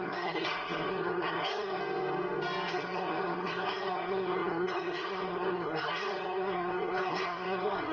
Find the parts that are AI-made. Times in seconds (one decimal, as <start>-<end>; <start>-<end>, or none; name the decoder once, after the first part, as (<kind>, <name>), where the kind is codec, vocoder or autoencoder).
0.0-1.8 (codec, SNAC); 2.7-7.9